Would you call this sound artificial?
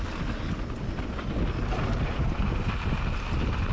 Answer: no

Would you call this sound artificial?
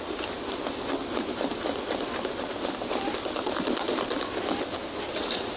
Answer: no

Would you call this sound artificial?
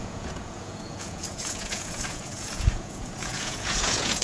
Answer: yes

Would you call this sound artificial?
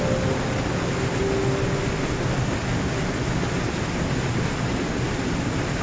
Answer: no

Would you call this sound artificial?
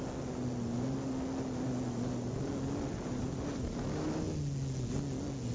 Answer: no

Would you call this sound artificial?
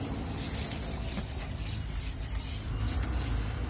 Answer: no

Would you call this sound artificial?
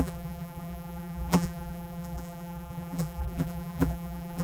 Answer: yes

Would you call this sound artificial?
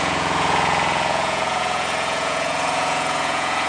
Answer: yes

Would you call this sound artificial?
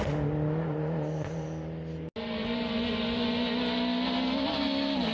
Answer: no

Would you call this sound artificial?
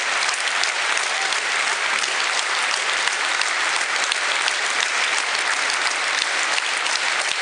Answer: no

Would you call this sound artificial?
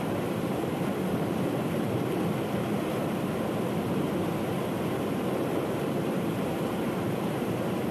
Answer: no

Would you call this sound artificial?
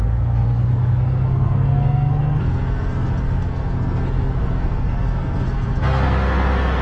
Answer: yes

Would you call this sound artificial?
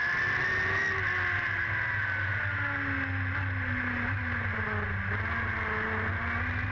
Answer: no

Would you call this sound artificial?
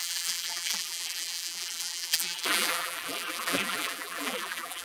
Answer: yes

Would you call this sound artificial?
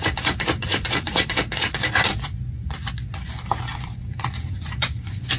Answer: yes